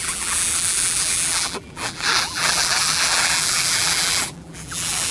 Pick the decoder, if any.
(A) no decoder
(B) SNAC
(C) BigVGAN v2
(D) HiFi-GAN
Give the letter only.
C